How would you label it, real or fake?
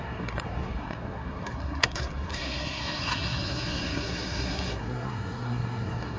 fake